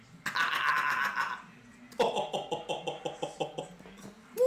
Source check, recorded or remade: recorded